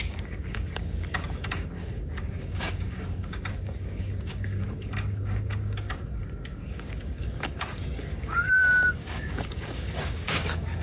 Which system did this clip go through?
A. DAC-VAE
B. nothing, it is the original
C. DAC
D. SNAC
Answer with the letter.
C